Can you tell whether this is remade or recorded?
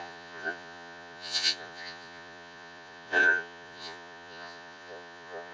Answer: remade